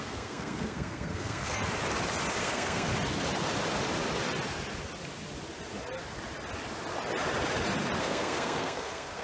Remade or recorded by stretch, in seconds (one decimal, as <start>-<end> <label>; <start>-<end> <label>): 0.0-1.6 remade; 1.6-2.4 recorded; 2.4-2.9 remade; 2.9-8.0 recorded; 8.0-9.2 remade